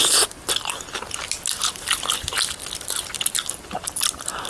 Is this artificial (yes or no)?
no